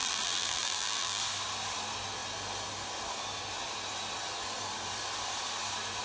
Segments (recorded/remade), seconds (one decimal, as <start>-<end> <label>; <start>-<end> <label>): 0.0-1.2 remade; 1.2-6.0 recorded

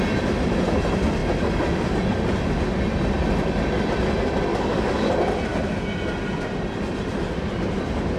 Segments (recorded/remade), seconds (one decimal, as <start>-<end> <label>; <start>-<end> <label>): 0.0-4.5 recorded; 4.5-5.1 remade; 5.1-8.2 recorded